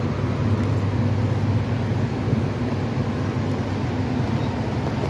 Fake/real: real